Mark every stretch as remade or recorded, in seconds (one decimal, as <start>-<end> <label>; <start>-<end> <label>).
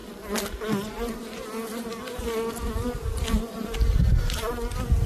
0.0-5.1 recorded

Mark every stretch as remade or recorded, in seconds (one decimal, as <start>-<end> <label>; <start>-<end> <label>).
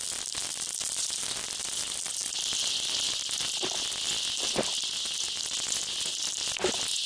0.0-7.1 recorded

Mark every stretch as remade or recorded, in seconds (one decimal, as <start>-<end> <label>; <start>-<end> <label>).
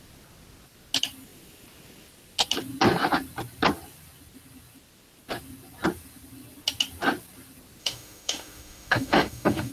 0.0-7.8 recorded; 7.8-9.7 remade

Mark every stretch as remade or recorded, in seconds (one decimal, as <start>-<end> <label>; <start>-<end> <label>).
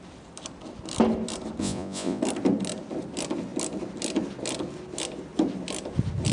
0.0-1.6 recorded; 1.6-2.2 remade; 2.2-6.3 recorded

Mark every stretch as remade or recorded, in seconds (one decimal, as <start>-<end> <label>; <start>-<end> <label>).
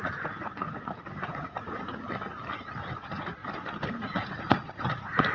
0.0-1.9 remade; 1.9-2.8 recorded; 2.8-3.4 remade; 3.4-3.9 recorded; 3.9-5.3 remade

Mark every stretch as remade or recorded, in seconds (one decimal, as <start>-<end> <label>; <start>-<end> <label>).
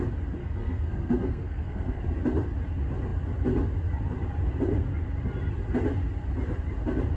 0.0-0.4 recorded; 0.4-2.0 remade; 2.0-7.2 recorded